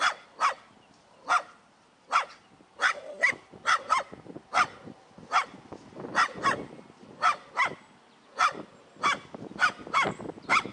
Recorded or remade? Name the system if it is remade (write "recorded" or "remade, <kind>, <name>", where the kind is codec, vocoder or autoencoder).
recorded